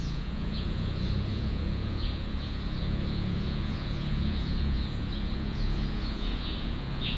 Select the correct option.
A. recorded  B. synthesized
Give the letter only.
B